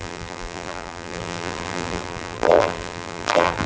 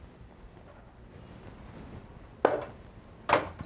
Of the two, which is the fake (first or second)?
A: first